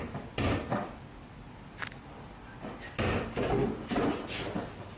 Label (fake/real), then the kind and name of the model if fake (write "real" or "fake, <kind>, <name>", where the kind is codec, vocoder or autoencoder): real